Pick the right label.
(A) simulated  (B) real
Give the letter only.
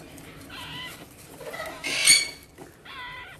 B